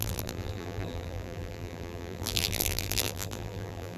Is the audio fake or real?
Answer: fake